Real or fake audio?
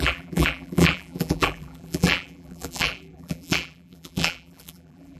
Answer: fake